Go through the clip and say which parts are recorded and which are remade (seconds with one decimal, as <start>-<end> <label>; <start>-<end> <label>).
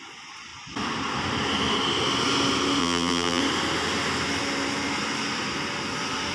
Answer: 0.0-2.8 recorded; 2.8-3.4 remade; 3.4-6.3 recorded